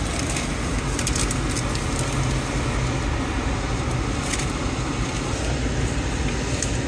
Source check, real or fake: real